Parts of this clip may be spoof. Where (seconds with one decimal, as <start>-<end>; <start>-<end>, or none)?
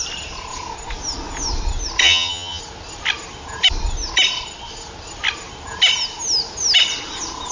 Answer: 2.0-2.6